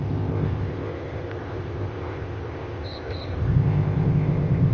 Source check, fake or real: fake